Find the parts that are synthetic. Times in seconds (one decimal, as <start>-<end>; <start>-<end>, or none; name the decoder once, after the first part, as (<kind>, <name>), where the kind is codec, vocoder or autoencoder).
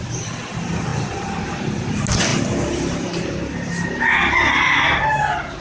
none